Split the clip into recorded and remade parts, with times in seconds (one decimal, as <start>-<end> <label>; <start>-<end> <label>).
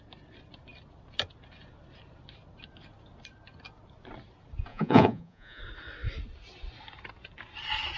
0.0-4.7 recorded; 4.7-5.6 remade; 5.6-8.0 recorded